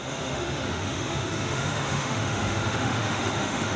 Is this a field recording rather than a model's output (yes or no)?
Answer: no